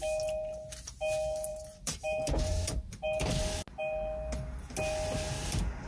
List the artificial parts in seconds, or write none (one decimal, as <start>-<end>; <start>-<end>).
1.5-3.3

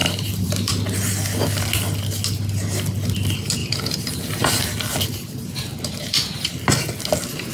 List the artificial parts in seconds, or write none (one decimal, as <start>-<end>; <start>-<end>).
0.0-0.7; 3.6-4.6; 5.7-6.6

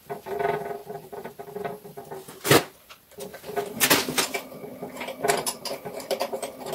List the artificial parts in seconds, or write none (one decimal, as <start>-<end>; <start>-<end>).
0.8-1.3; 3.3-3.9; 4.7-6.7

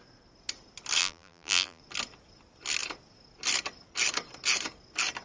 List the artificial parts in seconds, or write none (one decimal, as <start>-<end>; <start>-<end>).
1.0-1.8

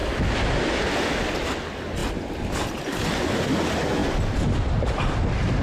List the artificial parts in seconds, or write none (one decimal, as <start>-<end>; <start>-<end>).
none